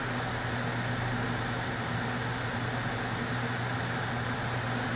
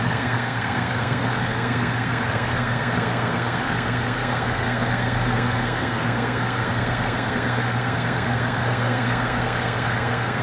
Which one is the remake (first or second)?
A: second